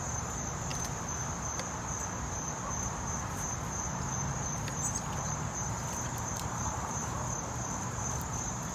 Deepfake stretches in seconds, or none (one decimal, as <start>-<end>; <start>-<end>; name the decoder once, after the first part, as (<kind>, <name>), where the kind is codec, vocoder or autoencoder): 0.0-0.7 (vocoder, BigVGAN v2); 5.2-8.7